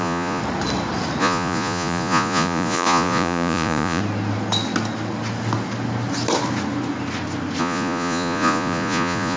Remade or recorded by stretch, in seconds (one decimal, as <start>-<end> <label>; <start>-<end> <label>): 0.0-0.4 remade; 0.4-1.2 recorded; 1.2-4.0 remade; 4.0-7.6 recorded; 7.6-9.4 remade